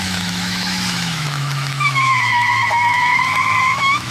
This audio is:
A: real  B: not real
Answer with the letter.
B